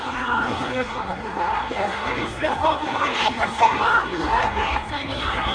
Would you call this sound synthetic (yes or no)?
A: yes